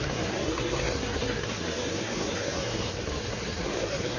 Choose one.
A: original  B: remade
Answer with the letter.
B